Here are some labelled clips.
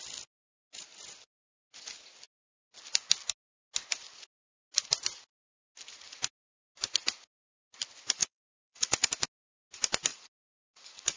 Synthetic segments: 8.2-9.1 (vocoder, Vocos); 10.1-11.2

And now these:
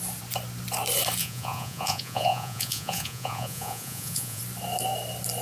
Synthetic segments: 1.2-4.4 (vocoder, Vocos)

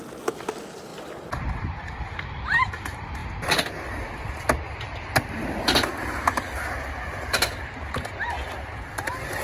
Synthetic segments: none